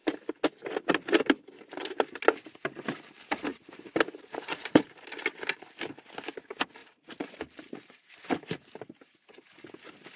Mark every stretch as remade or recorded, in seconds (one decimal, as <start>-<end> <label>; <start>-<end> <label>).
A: 0.0-3.5 recorded; 3.5-4.8 remade; 4.8-6.8 recorded; 6.8-8.0 remade; 8.0-10.2 recorded